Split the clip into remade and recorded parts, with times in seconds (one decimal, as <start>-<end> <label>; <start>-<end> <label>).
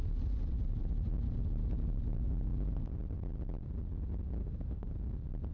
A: 0.0-4.4 recorded; 4.4-4.9 remade; 4.9-5.5 recorded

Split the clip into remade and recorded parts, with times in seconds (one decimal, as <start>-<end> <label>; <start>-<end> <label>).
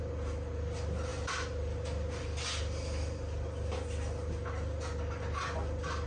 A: 0.0-6.1 recorded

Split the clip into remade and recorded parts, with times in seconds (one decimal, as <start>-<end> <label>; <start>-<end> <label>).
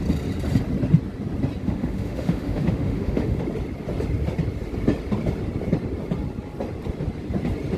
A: 0.0-1.6 recorded; 1.6-3.4 remade; 3.4-7.8 recorded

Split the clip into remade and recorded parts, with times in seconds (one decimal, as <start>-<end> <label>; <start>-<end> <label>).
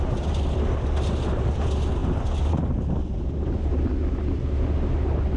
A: 0.0-5.4 recorded